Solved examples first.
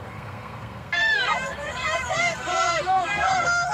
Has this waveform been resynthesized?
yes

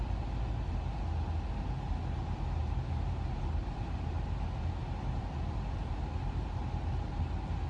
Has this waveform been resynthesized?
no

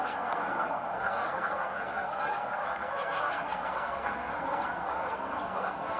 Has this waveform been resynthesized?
yes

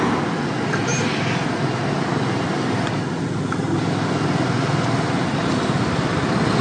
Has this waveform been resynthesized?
no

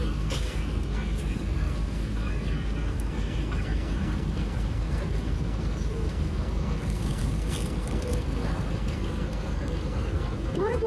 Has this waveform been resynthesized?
yes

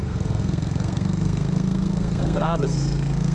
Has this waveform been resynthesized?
yes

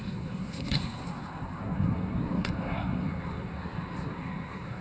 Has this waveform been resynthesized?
yes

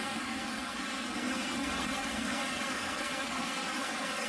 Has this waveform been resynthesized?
yes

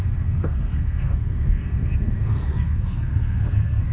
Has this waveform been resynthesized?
yes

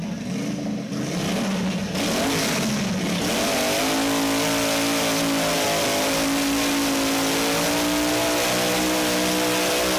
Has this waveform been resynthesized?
no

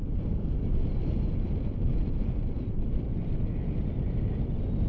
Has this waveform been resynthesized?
no